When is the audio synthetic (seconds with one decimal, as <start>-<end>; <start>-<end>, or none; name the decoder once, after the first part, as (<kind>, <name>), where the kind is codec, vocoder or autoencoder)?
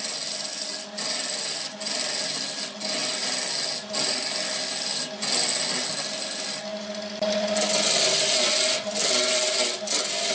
none